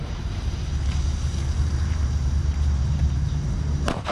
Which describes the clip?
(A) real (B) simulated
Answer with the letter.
B